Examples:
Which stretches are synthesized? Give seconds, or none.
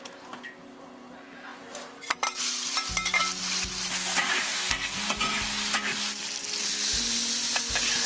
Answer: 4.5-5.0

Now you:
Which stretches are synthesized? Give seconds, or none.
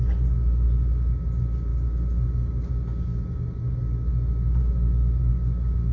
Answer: none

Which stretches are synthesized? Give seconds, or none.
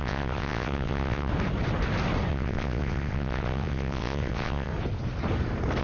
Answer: 0.0-1.3; 2.3-4.7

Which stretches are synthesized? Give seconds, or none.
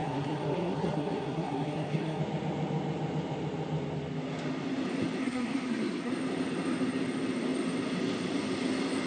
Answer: 0.0-2.2; 5.2-6.1